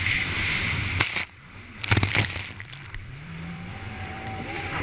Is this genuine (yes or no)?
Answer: no